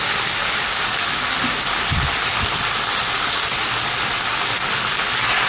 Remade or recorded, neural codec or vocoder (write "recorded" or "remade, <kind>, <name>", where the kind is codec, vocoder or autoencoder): recorded